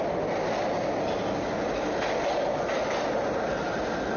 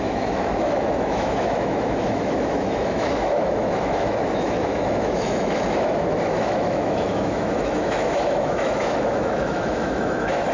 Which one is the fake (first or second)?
second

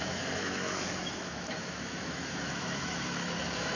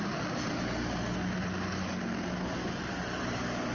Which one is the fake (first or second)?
first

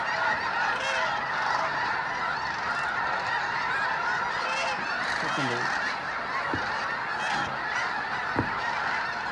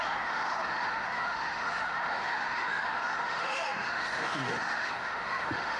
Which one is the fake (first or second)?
second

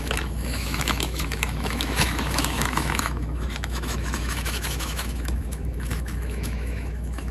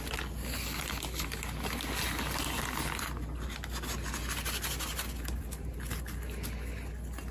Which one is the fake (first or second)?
first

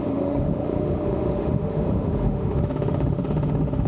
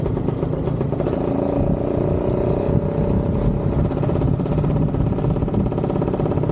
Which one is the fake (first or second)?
first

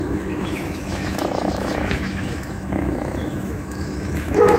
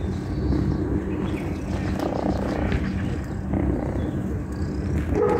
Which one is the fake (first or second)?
first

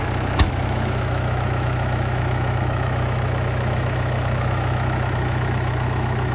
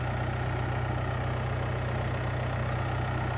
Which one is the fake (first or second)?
first